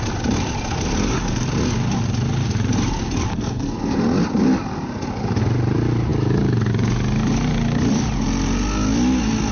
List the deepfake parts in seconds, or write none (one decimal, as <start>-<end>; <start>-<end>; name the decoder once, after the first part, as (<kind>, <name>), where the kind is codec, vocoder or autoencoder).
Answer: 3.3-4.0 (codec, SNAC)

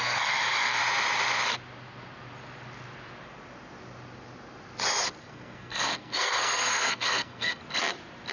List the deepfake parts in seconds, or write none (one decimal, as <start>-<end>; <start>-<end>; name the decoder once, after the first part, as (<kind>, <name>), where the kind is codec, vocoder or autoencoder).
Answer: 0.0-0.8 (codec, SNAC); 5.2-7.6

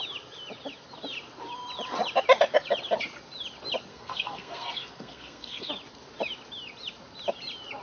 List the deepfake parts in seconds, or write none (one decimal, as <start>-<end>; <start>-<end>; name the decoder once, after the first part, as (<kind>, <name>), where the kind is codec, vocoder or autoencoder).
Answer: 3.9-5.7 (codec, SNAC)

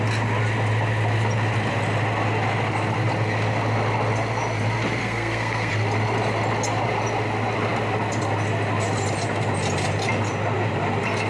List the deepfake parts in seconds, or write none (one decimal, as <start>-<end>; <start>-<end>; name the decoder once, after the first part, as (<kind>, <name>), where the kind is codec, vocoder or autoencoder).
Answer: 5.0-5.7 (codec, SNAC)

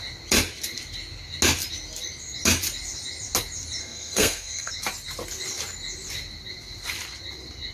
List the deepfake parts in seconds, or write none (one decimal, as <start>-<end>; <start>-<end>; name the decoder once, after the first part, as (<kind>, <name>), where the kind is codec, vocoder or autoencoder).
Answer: 3.8-4.7 (codec, SNAC)

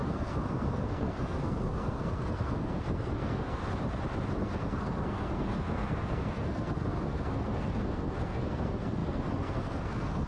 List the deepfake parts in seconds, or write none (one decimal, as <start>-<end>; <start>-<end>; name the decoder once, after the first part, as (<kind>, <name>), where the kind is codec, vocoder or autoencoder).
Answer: 0.0-3.6 (codec, SNAC); 4.4-10.3